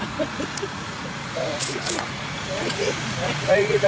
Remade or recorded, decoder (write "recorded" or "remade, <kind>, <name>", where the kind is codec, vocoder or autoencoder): remade, vocoder, Vocos